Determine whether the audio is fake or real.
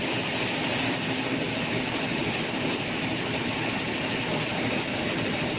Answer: fake